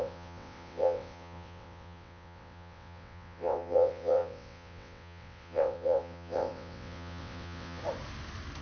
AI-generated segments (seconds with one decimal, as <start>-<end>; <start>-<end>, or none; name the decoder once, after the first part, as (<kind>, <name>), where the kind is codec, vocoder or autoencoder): 0.0-7.8 (vocoder, WaveNeXt)